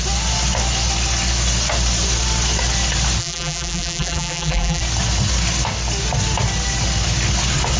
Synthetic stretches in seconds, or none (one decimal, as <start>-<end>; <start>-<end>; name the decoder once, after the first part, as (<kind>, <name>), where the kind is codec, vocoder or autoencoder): 3.2-4.8 (vocoder, BigVGAN v2)